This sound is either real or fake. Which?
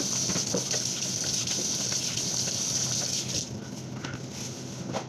real